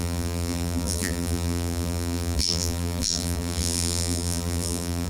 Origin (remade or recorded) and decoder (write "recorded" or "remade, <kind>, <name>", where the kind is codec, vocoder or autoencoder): remade, vocoder, BigVGAN v2